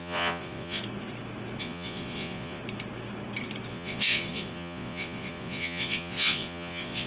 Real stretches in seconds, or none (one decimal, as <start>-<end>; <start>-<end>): 0.8-1.6; 2.6-3.7